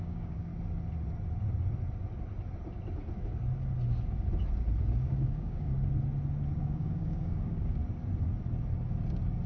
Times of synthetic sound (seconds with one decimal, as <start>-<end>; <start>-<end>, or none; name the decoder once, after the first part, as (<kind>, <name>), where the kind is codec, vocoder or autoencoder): 0.0-0.5 (codec, DAC); 4.8-5.7; 6.6-7.8